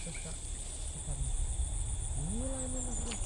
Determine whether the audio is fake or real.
real